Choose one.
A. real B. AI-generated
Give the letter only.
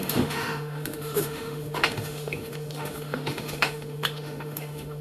B